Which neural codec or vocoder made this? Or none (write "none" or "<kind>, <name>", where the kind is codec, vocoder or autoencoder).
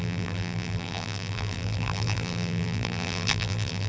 vocoder, BigVGAN v2